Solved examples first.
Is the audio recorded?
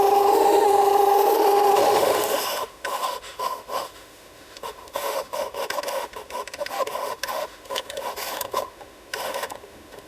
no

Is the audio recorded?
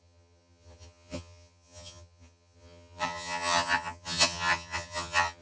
no